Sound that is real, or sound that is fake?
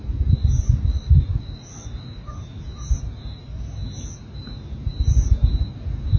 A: real